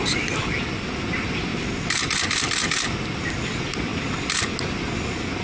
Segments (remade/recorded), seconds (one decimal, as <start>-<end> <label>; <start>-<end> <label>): 0.0-5.4 recorded